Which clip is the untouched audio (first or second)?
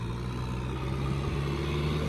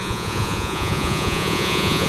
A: first